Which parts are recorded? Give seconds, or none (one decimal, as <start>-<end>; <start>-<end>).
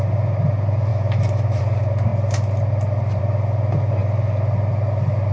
0.0-0.9; 1.6-5.3